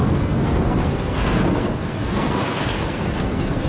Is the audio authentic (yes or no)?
no